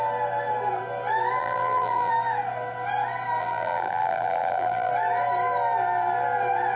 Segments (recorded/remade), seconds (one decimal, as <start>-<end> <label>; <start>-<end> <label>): 0.0-1.4 recorded; 1.4-2.1 remade; 2.1-3.4 recorded; 3.4-4.9 remade; 4.9-6.8 recorded